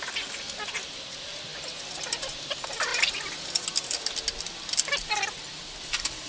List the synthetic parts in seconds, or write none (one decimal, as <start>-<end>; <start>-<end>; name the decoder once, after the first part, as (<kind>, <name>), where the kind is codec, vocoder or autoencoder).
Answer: none